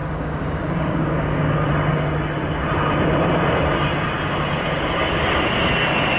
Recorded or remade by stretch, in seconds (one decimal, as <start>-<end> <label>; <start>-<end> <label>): 0.0-1.7 remade; 1.7-6.2 recorded